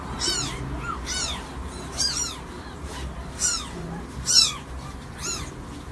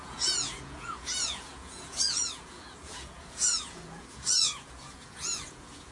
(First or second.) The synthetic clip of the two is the second